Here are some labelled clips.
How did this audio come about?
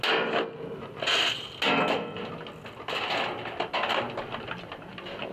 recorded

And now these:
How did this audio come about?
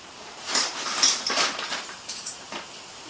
remade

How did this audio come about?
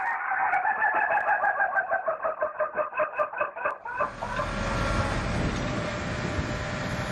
recorded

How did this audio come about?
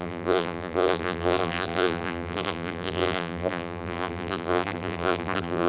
remade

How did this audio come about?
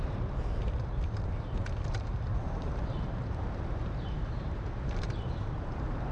remade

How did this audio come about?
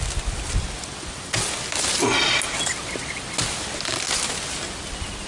recorded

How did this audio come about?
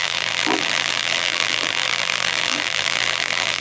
remade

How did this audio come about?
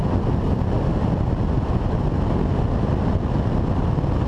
recorded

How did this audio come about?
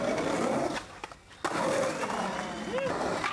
recorded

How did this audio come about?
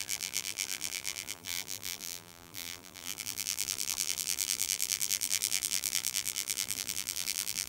remade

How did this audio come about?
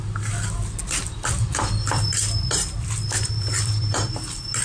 remade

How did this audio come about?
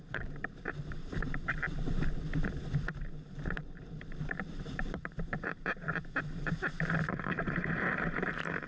remade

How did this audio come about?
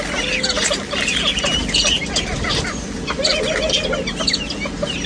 recorded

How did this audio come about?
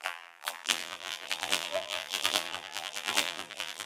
remade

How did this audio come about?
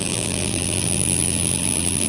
remade